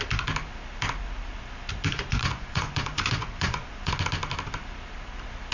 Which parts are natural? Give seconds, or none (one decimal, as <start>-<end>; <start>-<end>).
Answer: 0.0-1.9; 3.9-5.5